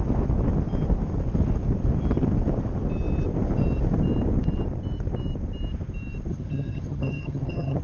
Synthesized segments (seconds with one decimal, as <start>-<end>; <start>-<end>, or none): 6.3-7.8